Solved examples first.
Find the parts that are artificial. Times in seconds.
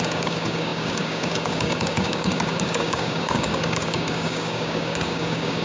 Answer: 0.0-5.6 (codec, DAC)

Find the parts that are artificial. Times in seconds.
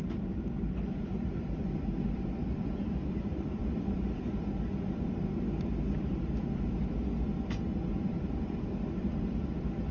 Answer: 0.0-6.8 (vocoder, BigVGAN v2); 7.9-9.9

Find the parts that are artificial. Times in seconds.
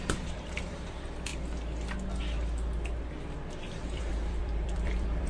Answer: 0.0-1.3 (vocoder, BigVGAN v2); 3.5-5.3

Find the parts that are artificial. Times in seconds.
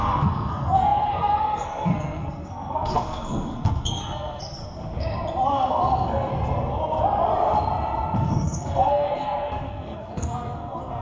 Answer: 0.0-4.6 (codec, SNAC); 5.5-6.3; 8.2-11.0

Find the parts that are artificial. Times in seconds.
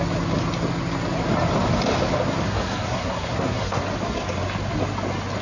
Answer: 2.4-3.8 (codec, SNAC)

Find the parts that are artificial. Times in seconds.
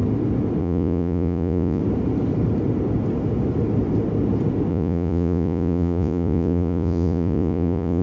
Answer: 0.6-1.8 (vocoder, Vocos); 4.7-8.0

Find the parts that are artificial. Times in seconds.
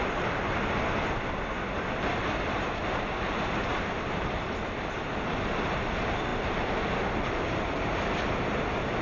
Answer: none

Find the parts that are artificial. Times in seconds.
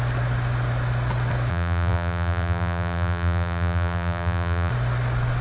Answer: 1.5-4.7 (vocoder, BigVGAN v2)